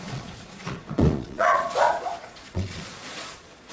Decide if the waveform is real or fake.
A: fake